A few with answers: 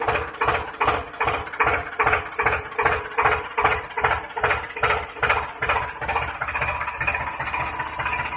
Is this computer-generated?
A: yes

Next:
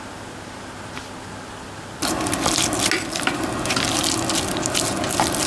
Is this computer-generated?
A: no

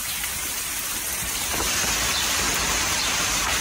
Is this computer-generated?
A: yes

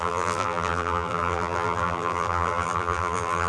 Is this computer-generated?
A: yes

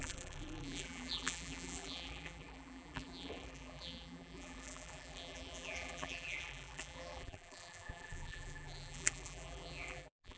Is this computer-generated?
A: yes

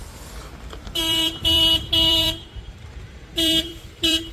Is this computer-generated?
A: yes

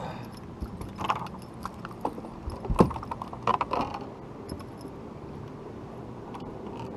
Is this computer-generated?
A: no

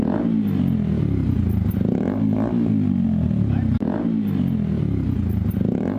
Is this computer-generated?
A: no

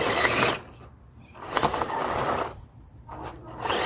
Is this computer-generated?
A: no